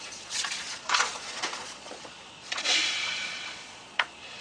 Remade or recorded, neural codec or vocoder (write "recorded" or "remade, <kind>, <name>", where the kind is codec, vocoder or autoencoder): remade, vocoder, Vocos